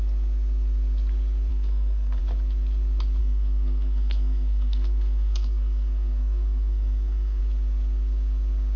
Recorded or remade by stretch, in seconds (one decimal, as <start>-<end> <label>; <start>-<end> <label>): 0.0-1.5 recorded; 1.5-2.2 remade; 2.2-3.2 recorded; 3.2-7.4 remade; 7.4-8.8 recorded